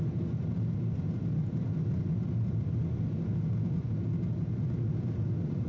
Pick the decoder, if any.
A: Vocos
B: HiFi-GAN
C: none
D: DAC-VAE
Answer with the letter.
C